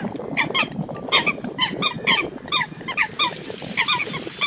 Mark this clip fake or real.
real